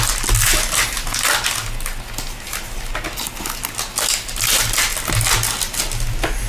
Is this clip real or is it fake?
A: real